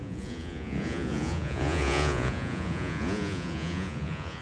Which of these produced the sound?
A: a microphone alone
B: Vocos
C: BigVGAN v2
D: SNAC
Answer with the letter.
B